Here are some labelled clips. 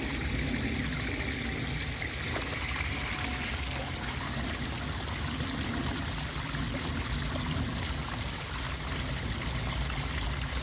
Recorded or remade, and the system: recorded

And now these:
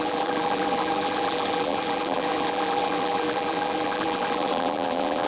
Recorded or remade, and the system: remade, vocoder, BigVGAN v2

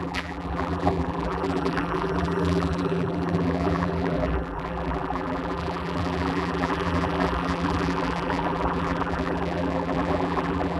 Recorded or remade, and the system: remade, vocoder, BigVGAN v2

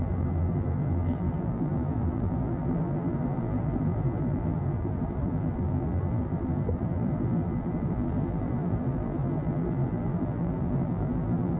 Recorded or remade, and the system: remade, vocoder, BigVGAN v2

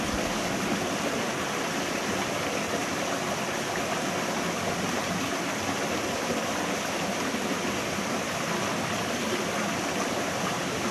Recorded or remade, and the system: recorded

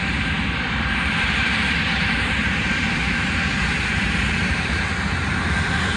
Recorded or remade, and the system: remade, vocoder, BigVGAN v2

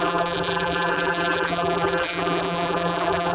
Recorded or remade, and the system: remade, vocoder, BigVGAN v2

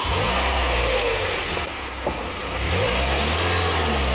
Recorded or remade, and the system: recorded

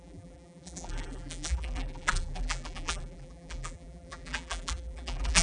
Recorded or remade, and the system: remade, vocoder, BigVGAN v2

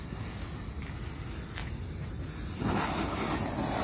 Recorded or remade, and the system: recorded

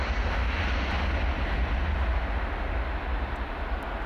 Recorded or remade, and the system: recorded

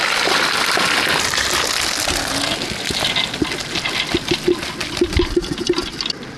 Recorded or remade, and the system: recorded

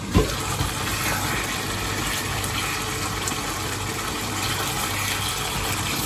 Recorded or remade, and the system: recorded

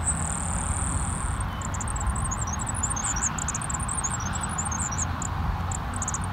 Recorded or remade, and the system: recorded